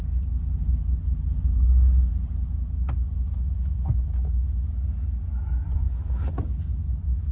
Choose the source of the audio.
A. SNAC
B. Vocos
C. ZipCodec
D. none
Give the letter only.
D